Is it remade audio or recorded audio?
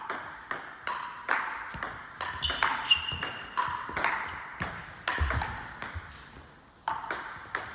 recorded